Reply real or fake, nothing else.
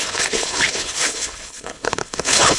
fake